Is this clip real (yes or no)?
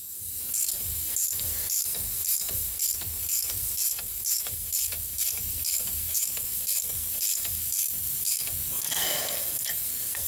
no